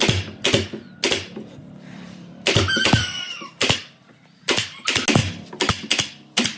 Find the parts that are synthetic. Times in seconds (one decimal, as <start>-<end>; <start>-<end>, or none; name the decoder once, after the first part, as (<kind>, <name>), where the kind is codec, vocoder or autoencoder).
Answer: 1.6-4.4 (vocoder, BigVGAN v2); 5.2-6.6